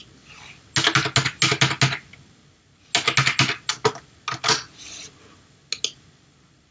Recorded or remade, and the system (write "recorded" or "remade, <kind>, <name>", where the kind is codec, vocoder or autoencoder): recorded